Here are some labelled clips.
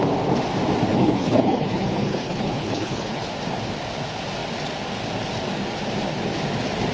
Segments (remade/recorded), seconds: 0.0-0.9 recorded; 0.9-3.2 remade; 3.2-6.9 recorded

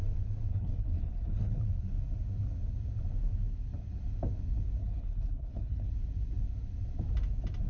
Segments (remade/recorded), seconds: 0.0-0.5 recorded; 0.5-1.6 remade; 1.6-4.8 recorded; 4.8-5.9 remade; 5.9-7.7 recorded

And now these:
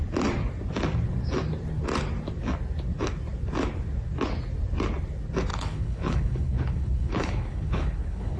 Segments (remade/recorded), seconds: 0.0-5.5 recorded; 5.5-8.4 remade

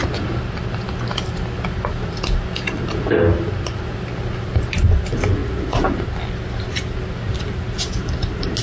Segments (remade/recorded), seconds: 0.0-8.6 recorded

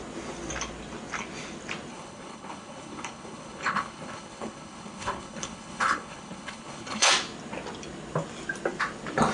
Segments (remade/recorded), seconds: 0.0-1.9 recorded; 1.9-7.1 remade; 7.1-9.3 recorded

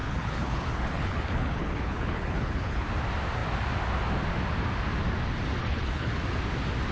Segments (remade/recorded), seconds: 0.0-2.9 remade; 2.9-5.6 recorded; 5.6-6.2 remade; 6.2-6.9 recorded